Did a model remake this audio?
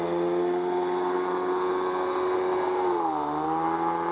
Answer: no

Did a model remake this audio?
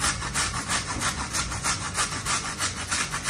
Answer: yes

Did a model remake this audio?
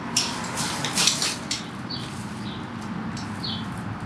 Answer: no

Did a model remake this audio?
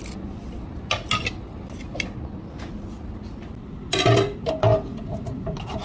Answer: no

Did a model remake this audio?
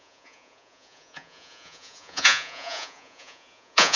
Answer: yes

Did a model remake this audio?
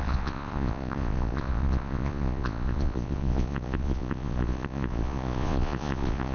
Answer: yes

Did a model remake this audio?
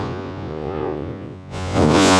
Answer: yes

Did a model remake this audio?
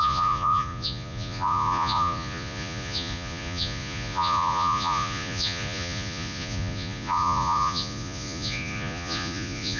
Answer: yes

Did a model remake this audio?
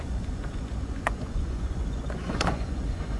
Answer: yes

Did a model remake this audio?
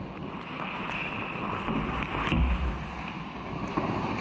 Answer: no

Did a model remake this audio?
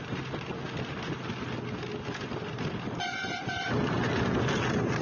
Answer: no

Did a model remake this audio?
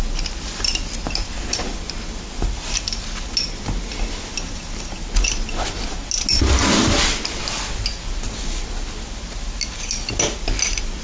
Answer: no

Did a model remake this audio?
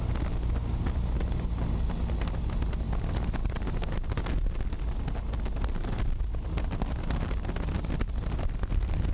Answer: no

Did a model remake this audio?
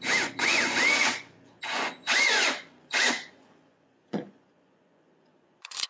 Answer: yes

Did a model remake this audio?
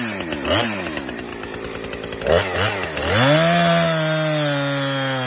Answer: no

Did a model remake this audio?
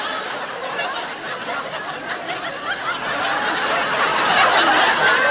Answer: no